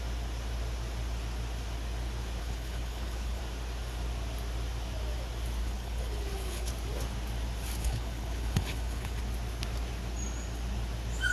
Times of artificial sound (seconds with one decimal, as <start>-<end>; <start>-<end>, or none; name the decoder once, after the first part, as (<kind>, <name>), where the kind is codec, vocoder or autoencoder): 2.4-3.4 (codec, HILCodec); 5.6-6.7; 7.8-9.2